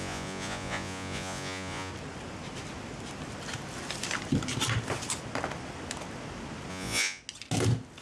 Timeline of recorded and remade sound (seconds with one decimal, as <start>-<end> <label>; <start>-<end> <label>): 0.0-1.9 remade; 1.9-6.7 recorded; 6.7-7.2 remade; 7.2-8.0 recorded